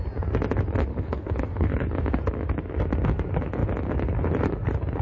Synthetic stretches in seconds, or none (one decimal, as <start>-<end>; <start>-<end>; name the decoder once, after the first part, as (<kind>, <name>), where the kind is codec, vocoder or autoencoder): 0.9-2.0 (codec, HILCodec)